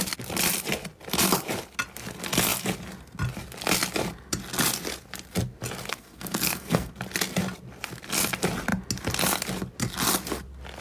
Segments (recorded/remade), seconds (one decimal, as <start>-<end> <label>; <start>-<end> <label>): 0.0-5.9 recorded; 5.9-6.9 remade; 6.9-10.8 recorded